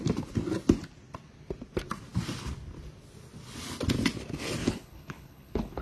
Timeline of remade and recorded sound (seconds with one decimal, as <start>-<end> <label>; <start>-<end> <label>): 0.0-4.6 recorded; 4.6-5.8 remade